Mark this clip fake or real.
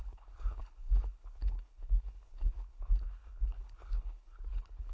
fake